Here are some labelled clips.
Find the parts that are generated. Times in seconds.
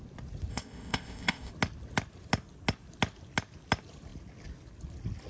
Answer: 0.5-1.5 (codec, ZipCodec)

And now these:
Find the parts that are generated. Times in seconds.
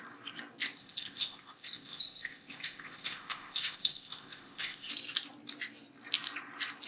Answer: 0.8-4.9 (codec, ZipCodec)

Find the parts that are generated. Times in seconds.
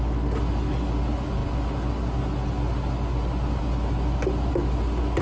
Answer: none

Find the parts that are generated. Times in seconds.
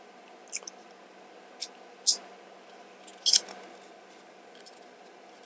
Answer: none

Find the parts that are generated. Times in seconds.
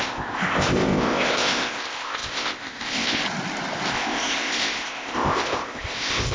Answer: 0.0-3.2 (codec, ZipCodec); 3.9-6.3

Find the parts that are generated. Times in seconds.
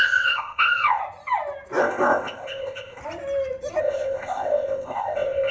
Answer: 0.0-1.0 (codec, ZipCodec); 1.8-3.0; 3.8-5.5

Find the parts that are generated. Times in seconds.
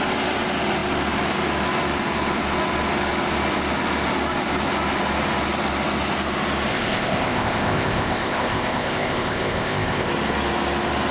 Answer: 6.7-10.1 (codec, ZipCodec)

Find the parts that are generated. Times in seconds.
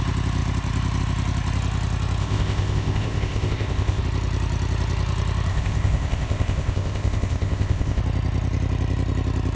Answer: 2.2-4.0 (codec, ZipCodec); 5.5-8.0